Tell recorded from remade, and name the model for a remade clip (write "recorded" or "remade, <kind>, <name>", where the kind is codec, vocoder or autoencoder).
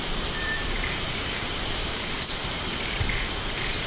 remade, vocoder, BigVGAN v2